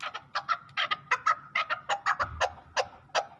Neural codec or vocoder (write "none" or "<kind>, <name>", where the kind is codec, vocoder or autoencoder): none